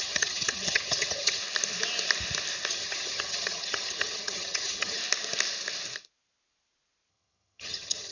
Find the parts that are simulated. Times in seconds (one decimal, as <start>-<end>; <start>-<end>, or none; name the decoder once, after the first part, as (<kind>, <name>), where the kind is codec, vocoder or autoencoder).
0.0-1.4 (vocoder, HiFi-GAN); 2.7-5.0; 7.1-8.1